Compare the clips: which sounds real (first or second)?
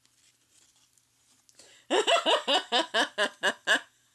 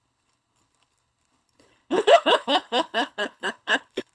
first